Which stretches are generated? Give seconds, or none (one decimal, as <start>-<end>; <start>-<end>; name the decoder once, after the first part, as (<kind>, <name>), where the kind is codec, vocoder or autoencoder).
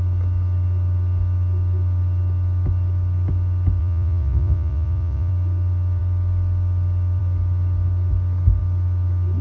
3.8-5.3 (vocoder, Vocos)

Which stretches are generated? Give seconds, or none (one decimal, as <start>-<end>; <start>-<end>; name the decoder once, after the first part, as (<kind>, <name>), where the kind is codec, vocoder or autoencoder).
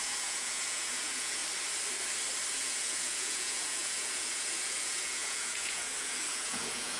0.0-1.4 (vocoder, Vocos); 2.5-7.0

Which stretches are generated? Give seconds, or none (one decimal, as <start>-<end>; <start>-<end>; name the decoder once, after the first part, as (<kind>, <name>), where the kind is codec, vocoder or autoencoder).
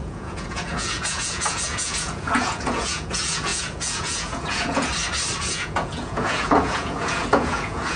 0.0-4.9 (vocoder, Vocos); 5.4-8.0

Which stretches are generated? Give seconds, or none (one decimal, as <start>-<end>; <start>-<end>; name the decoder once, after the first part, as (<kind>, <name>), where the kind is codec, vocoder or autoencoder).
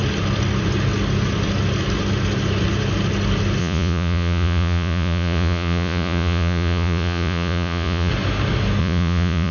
3.6-8.1 (vocoder, Vocos); 8.8-9.5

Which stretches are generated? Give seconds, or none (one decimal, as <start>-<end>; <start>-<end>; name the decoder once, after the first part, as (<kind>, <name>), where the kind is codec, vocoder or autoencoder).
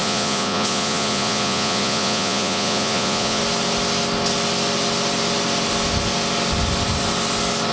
0.0-3.4 (vocoder, Vocos)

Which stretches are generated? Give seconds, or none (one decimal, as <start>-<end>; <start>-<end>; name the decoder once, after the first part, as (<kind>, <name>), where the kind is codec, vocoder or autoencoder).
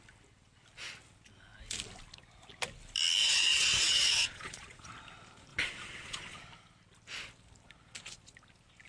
3.2-4.9 (vocoder, Vocos); 5.5-6.4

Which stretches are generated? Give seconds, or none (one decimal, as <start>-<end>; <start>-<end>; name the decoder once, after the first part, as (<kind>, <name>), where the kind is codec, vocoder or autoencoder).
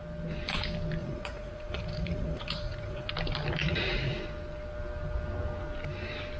1.0-3.1 (vocoder, Vocos); 3.6-4.2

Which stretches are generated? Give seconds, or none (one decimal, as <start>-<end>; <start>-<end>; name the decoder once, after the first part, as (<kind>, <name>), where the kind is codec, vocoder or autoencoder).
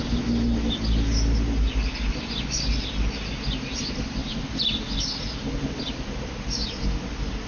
none